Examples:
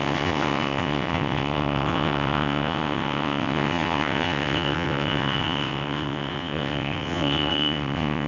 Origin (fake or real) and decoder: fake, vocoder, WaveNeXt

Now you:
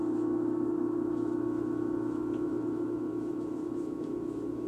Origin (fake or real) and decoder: fake, autoencoder, DAC-VAE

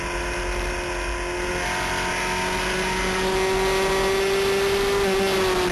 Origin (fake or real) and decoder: real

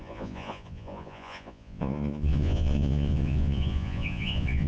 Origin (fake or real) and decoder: fake, vocoder, Vocos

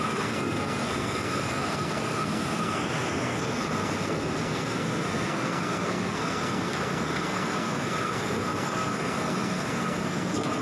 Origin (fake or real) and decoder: fake, codec, SNAC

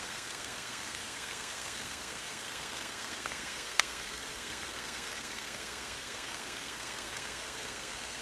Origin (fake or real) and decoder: fake, codec, SNAC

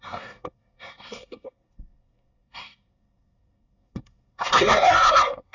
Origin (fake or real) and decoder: fake, codec, SNAC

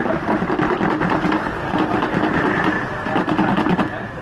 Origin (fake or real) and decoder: real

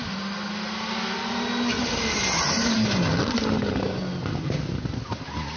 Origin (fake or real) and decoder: real